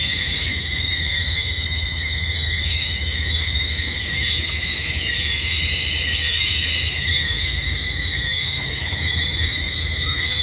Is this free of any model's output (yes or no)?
no